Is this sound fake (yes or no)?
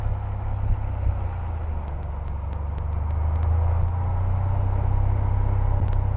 no